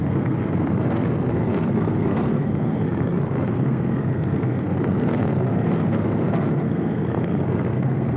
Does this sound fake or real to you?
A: fake